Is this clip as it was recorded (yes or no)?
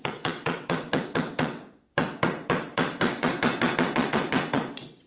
no